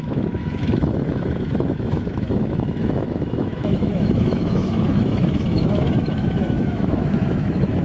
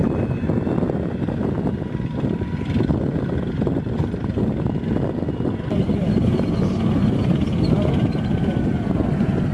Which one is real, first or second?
second